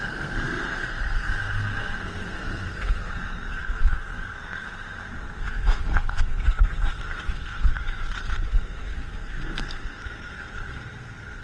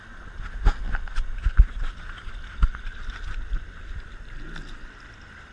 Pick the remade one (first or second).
first